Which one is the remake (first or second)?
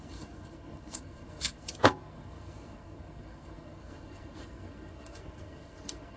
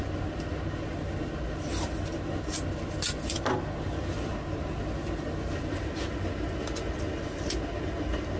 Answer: first